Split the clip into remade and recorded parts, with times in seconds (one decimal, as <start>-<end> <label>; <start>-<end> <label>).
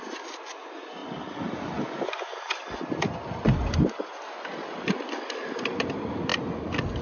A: 0.0-7.0 recorded